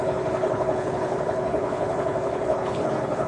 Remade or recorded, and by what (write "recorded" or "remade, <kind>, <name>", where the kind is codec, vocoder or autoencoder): remade, codec, HILCodec